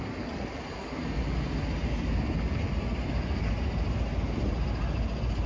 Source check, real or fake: real